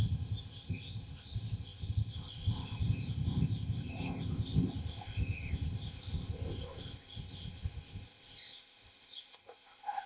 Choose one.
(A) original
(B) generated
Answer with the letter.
B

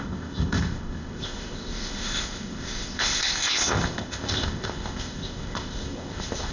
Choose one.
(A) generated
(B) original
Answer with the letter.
A